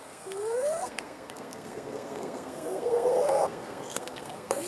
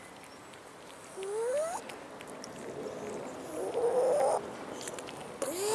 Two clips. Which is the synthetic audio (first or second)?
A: first